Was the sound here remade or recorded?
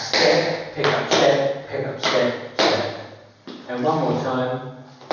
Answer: recorded